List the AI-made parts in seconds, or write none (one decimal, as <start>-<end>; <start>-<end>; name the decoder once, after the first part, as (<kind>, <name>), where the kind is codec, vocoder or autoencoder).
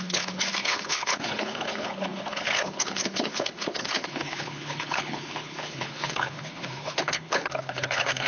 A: 0.0-8.3 (codec, HILCodec)